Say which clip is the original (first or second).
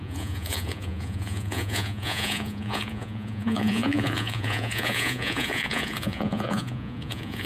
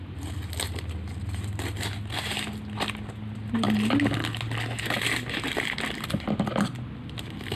second